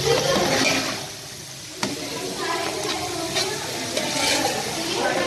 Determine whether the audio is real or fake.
real